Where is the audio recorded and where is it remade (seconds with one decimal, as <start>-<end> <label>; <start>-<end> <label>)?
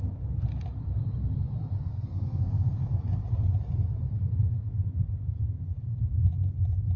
0.0-1.9 recorded; 1.9-3.0 remade; 3.0-7.0 recorded